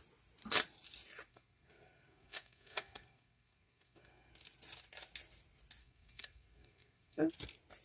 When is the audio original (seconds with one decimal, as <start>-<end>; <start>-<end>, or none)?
0.0-1.3; 4.3-5.8; 7.3-7.8